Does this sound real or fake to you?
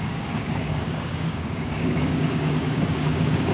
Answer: fake